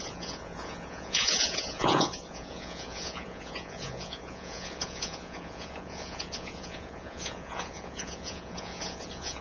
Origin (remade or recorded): remade